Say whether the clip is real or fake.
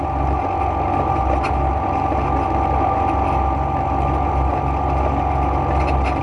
real